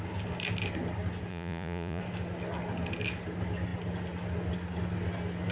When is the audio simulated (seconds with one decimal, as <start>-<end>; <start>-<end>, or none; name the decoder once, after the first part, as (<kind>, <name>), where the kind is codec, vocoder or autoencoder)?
1.3-2.0 (vocoder, Vocos)